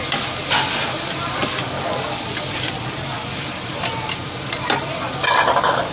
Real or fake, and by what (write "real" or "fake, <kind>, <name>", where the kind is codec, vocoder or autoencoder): real